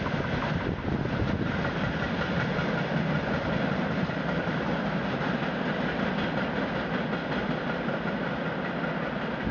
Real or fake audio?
real